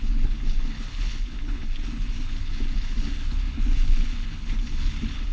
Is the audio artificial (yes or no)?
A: yes